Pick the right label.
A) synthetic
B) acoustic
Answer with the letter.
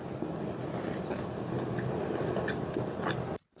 B